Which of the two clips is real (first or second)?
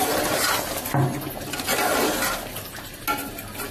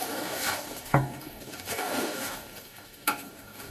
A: first